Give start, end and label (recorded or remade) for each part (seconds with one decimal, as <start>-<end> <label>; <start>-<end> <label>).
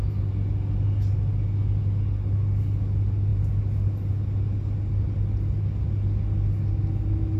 0.0-7.4 recorded